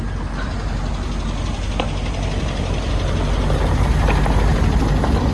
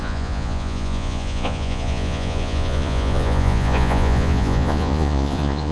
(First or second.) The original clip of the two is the first